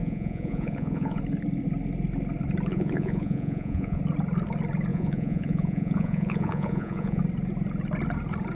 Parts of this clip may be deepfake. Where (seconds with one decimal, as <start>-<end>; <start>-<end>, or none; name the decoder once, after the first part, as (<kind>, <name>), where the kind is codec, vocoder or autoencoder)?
0.0-1.2 (vocoder, Vocos); 2.7-4.0; 4.9-7.2